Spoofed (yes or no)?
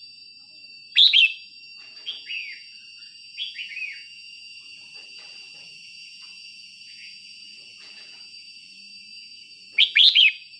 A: yes